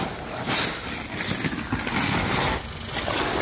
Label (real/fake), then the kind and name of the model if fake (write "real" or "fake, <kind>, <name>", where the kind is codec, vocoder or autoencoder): real